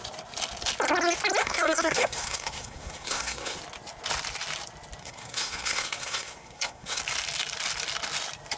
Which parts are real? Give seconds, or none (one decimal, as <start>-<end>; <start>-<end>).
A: 0.0-1.4; 3.6-5.0; 7.0-8.6